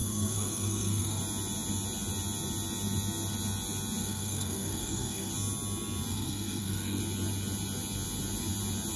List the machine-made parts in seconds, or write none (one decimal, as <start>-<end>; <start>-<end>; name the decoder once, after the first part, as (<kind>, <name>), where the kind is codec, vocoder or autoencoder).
0.0-1.2 (codec, SNAC); 4.0-5.3; 6.1-7.0